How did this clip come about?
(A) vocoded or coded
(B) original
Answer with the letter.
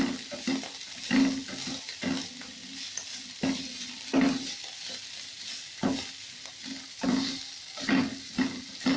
B